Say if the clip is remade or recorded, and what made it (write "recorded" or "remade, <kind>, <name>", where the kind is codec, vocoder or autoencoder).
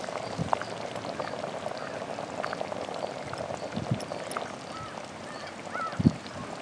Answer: recorded